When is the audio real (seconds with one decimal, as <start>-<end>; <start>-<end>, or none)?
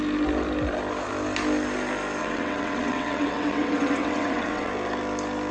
0.0-2.2; 4.7-5.5